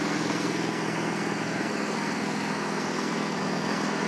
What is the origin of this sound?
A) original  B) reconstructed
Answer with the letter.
B